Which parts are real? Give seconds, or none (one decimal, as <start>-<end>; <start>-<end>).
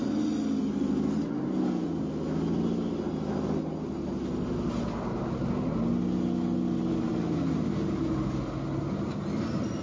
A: 0.0-9.8